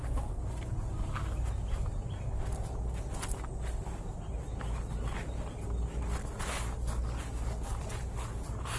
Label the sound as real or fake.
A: real